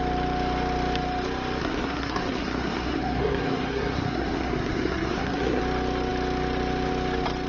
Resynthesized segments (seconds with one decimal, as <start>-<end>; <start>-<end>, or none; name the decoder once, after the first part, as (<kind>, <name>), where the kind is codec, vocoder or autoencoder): 1.6-5.6 (codec, SNAC)